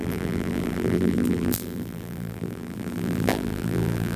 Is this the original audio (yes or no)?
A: no